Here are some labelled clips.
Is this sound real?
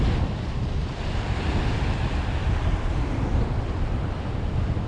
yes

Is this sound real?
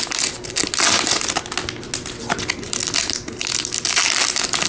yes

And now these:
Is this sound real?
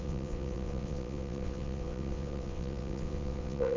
no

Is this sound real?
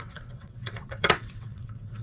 no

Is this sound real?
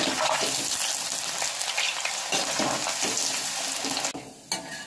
yes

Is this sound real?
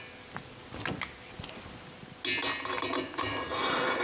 yes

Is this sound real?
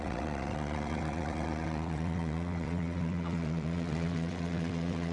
no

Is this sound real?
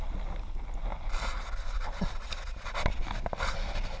yes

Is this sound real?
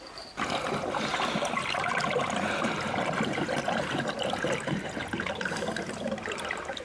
yes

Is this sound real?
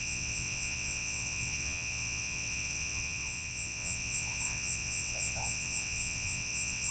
no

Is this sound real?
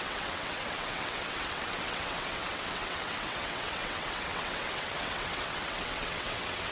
no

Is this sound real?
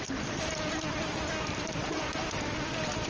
yes